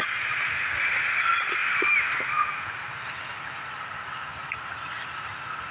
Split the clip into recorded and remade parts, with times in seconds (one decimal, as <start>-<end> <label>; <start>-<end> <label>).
0.0-5.7 recorded